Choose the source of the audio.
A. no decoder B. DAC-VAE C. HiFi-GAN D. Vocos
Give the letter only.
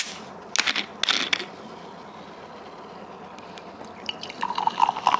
A